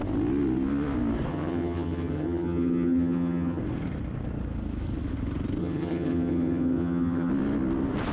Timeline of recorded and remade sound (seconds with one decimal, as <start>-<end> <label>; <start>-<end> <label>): 0.0-1.3 recorded; 1.3-3.6 remade; 3.6-5.6 recorded; 5.6-7.3 remade; 7.3-8.1 recorded